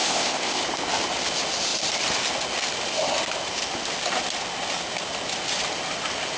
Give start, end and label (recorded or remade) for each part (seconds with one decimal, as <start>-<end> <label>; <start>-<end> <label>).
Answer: 0.0-0.6 remade; 0.6-6.4 recorded